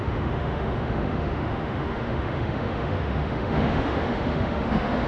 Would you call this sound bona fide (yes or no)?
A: no